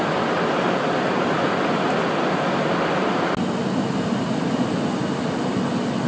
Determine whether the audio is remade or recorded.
recorded